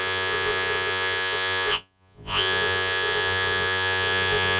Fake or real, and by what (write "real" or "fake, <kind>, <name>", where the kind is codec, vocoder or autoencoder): fake, vocoder, Vocos